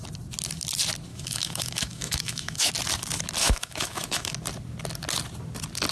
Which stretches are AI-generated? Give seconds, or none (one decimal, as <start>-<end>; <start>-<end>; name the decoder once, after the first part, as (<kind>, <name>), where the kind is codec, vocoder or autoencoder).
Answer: 1.1-2.7 (autoencoder, DAC-VAE); 3.4-4.3